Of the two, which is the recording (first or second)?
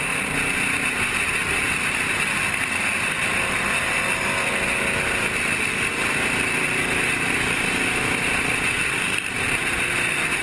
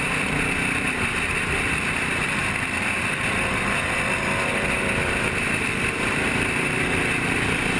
first